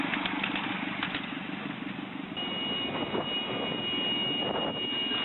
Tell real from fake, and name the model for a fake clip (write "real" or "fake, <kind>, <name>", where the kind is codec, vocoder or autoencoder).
real